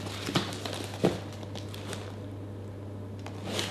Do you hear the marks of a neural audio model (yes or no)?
no